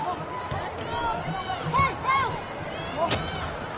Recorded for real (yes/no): yes